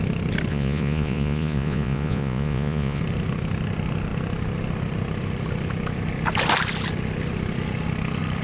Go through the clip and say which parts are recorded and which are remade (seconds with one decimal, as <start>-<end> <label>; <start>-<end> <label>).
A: 0.0-0.5 recorded; 0.5-3.0 remade; 3.0-8.4 recorded